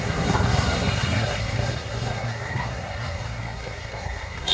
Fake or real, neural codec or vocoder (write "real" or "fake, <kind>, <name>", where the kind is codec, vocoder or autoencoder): fake, codec, SNAC